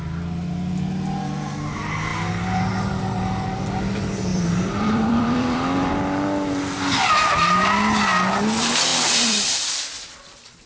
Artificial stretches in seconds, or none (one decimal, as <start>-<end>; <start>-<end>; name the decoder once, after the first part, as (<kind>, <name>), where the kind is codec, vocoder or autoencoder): 4.3-5.9 (vocoder, BigVGAN v2); 8.9-9.8